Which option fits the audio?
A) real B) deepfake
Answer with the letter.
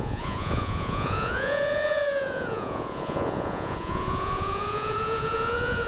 B